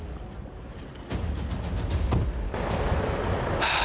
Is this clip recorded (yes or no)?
yes